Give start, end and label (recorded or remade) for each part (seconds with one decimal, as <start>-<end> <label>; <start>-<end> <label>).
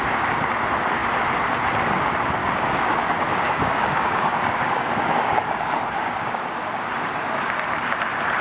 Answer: 0.0-2.4 recorded; 2.4-7.4 remade; 7.4-8.4 recorded